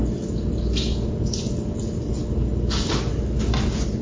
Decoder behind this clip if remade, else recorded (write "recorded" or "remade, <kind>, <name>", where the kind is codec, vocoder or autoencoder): recorded